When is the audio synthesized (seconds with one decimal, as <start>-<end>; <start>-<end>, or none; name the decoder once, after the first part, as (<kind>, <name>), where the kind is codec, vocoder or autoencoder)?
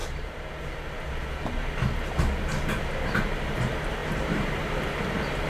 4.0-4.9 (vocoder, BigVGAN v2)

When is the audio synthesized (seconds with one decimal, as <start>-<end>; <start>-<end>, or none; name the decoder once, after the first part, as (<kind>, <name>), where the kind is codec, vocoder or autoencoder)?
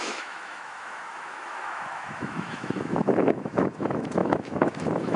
0.0-5.2 (autoencoder, DAC-VAE)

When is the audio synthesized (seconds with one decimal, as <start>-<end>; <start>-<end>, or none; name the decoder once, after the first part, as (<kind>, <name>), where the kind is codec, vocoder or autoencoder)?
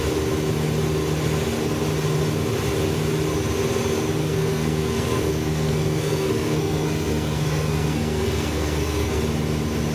4.2-9.2 (codec, SNAC)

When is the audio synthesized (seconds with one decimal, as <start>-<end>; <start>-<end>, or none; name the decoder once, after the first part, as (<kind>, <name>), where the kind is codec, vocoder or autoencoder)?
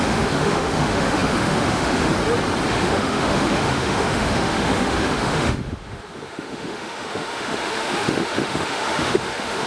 0.0-2.1 (autoencoder, DAC-VAE); 2.7-9.7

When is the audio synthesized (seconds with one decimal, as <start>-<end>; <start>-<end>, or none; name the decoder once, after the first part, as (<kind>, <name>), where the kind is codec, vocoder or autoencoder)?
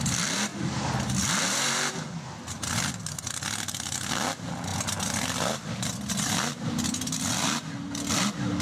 none